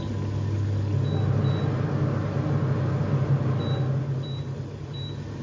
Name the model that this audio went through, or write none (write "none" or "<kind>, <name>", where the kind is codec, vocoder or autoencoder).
none